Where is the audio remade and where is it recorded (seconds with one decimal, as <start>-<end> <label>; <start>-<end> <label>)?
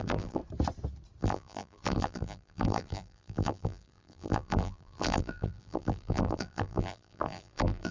0.0-0.4 remade; 0.4-1.2 recorded; 1.2-7.9 remade